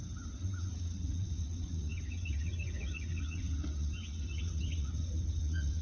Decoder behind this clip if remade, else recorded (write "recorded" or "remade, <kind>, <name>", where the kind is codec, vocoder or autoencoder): remade, vocoder, WaveNeXt